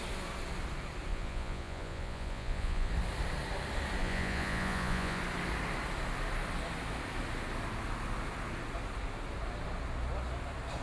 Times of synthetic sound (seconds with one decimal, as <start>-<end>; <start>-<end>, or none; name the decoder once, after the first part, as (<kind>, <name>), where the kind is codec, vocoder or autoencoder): 1.1-2.9 (vocoder, Vocos); 4.0-5.2